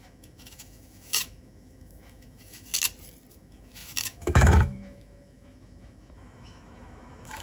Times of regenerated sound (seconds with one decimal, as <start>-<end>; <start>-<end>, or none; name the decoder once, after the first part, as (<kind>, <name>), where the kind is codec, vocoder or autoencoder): 0.0-2.7 (autoencoder, DAC-VAE); 3.3-7.4